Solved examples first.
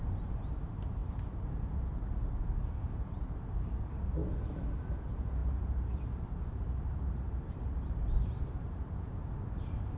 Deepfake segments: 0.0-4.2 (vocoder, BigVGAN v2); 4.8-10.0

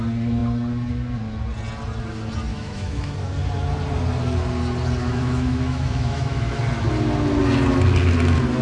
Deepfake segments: 2.5-3.1 (autoencoder, DAC-VAE); 5.0-6.6

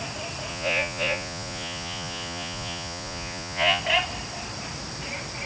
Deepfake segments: 0.5-3.8 (vocoder, Vocos)

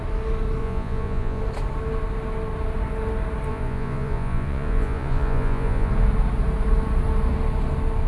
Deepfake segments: 0.6-1.4 (vocoder, Vocos); 3.5-5.9